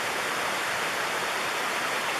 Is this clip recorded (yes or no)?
no